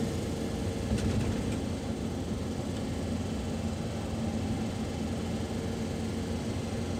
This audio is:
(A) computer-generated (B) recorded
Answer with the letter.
B